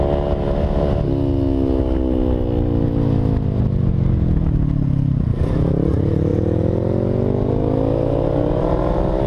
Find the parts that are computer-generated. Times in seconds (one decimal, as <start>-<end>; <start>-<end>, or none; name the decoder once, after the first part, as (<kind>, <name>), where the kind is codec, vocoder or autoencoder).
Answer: none